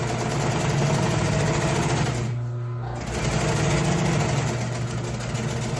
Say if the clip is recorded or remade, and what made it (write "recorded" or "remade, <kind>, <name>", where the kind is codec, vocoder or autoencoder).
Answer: recorded